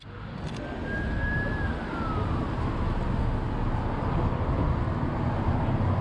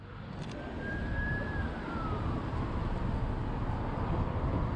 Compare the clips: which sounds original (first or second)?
first